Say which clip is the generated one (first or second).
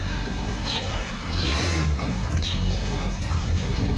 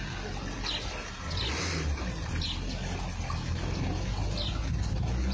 first